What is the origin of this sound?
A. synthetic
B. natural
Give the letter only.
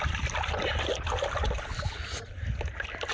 B